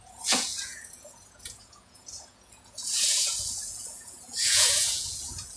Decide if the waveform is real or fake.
fake